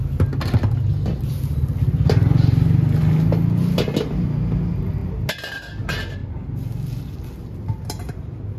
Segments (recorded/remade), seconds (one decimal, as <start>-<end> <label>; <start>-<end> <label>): 0.0-8.6 recorded